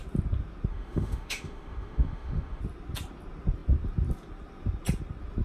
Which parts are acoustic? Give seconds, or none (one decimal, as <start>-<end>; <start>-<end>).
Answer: 0.0-0.7; 2.6-5.4